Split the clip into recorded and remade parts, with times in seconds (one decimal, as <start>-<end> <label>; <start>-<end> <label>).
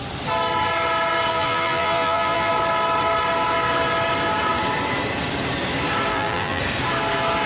0.0-1.3 recorded; 1.3-2.5 remade; 2.5-6.1 recorded; 6.1-6.6 remade; 6.6-7.5 recorded